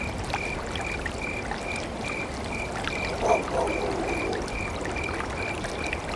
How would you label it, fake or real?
real